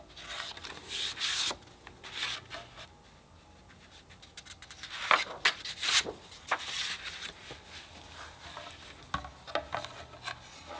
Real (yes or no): yes